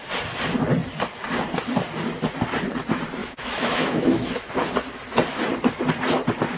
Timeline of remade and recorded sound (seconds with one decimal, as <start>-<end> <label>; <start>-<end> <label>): 0.0-3.2 recorded; 3.2-4.5 remade; 4.5-6.6 recorded